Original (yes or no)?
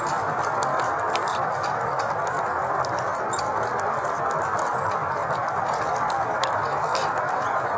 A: yes